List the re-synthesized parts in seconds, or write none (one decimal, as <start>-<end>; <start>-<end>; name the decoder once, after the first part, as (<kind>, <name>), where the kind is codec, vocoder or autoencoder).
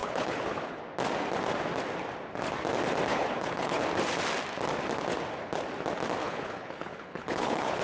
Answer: 0.0-0.8 (codec, HILCodec); 3.1-3.8; 6.2-7.8